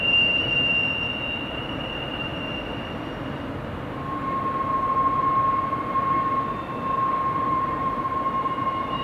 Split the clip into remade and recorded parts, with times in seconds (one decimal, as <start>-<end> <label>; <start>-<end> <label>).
0.0-0.7 remade; 0.7-1.5 recorded; 1.5-2.3 remade; 2.3-7.4 recorded; 7.4-9.0 remade